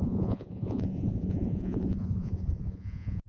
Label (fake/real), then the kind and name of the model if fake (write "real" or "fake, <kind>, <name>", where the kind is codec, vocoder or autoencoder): fake, vocoder, Vocos